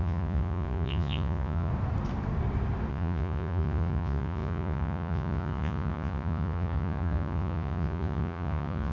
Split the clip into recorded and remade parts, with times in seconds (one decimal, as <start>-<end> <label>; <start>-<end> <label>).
0.0-1.7 remade; 1.7-2.9 recorded; 2.9-8.9 remade